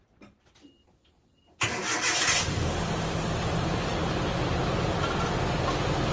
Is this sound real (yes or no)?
yes